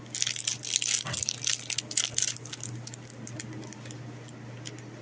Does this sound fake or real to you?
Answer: real